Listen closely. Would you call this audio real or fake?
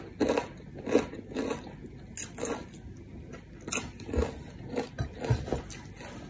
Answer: real